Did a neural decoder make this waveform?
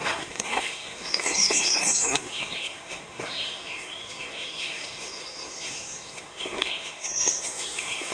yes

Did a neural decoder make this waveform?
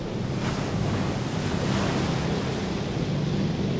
no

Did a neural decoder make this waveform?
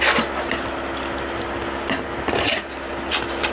no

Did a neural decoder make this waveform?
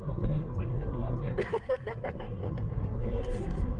yes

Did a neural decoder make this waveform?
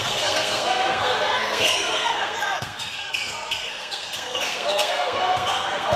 yes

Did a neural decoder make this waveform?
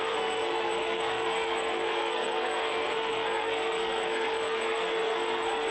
yes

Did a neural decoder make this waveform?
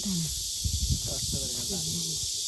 no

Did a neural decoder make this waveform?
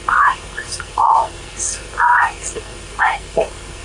yes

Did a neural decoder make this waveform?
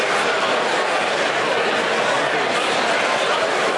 no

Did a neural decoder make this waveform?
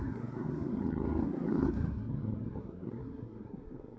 yes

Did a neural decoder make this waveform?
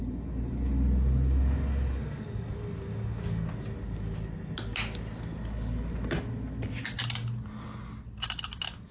no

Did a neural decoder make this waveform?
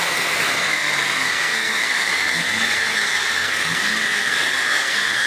yes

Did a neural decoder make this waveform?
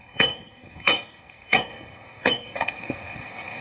yes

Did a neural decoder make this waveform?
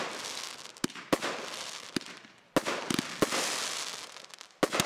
no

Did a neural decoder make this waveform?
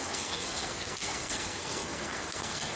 yes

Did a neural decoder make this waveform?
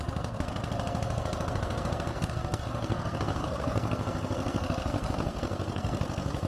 yes